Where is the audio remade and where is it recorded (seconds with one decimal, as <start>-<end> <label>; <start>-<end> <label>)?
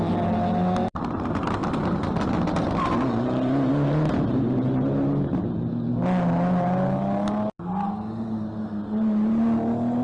0.0-10.0 recorded